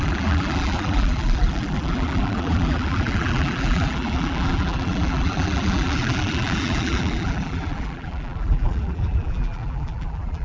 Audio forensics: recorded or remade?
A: remade